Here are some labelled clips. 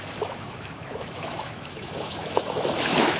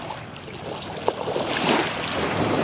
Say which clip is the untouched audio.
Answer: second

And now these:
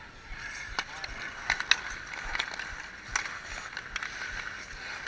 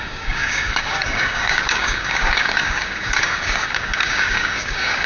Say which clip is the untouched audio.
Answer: first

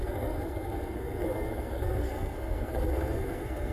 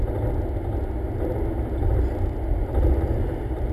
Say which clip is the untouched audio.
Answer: second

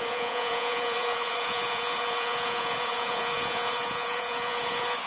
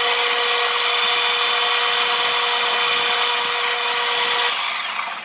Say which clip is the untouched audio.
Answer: second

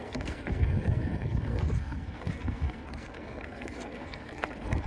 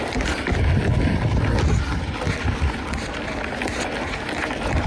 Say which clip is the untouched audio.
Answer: second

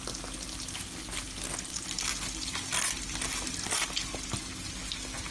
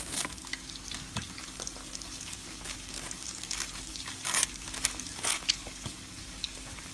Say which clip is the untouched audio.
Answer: first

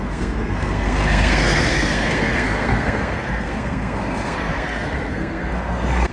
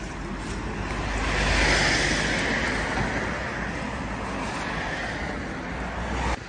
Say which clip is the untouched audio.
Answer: second